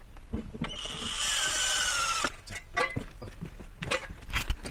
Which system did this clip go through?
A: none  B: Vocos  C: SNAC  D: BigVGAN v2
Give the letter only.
A